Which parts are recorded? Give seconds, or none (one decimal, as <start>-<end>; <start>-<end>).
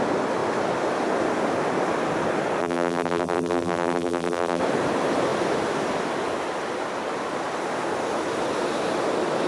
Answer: 0.0-2.6; 4.6-9.5